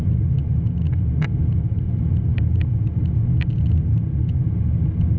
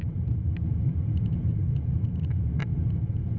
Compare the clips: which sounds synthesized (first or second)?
second